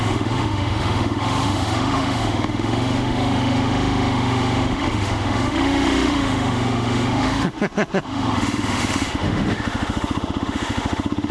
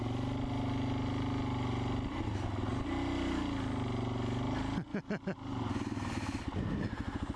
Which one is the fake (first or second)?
first